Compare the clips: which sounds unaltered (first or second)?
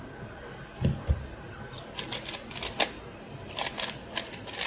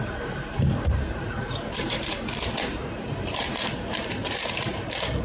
first